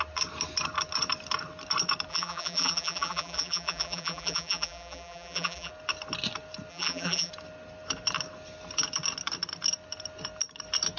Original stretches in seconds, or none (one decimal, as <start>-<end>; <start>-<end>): 0.0-2.1; 5.7-6.7; 7.3-11.0